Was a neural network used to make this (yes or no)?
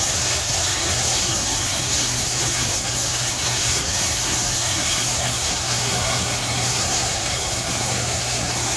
yes